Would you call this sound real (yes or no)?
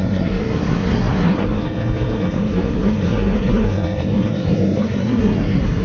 no